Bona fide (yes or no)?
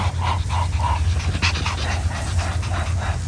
yes